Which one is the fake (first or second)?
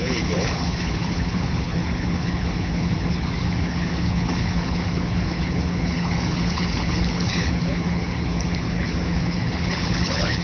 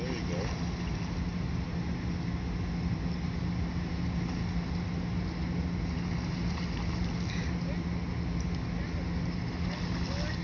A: first